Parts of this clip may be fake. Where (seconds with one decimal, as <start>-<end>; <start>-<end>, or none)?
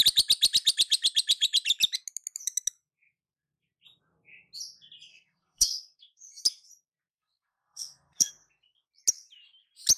5.1-6.4; 7.1-8.3